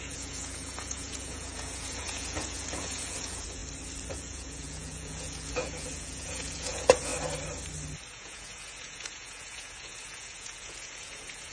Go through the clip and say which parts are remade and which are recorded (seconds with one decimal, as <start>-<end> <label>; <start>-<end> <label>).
0.0-3.6 remade; 3.6-4.1 recorded; 4.1-7.1 remade; 7.1-8.1 recorded; 8.1-11.5 remade